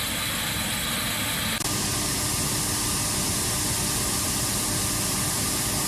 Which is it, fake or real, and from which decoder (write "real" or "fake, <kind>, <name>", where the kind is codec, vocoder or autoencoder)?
real